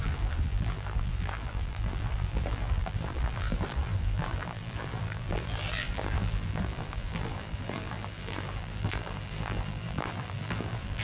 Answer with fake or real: fake